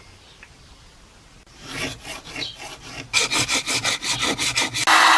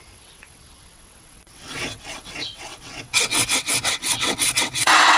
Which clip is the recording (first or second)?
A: first